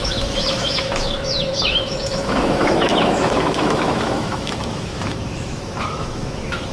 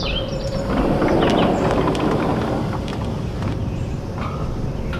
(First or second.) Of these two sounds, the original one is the second